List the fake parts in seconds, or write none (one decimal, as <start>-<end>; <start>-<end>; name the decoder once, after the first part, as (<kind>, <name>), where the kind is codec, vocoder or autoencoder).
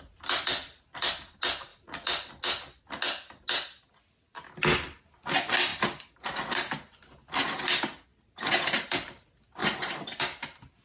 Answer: 1.7-2.3 (vocoder, BigVGAN v2); 5.7-6.3; 8.1-8.9; 9.6-10.8